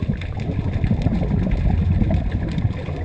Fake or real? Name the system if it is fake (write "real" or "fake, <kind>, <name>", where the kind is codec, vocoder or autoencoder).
real